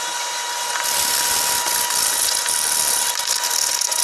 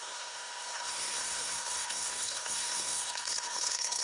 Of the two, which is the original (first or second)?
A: first